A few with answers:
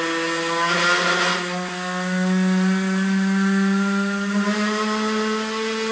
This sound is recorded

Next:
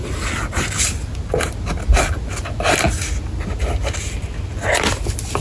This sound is recorded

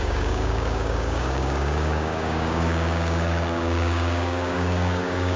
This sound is remade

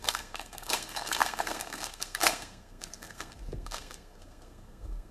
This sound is remade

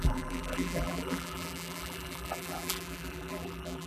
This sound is remade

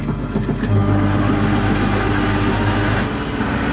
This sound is recorded